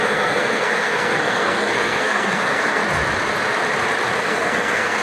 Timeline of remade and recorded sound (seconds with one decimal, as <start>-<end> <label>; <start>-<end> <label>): 0.0-2.8 remade; 2.8-4.2 recorded; 4.2-5.0 remade